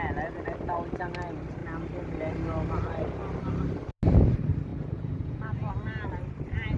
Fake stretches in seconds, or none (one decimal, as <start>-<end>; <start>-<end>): 4.7-5.7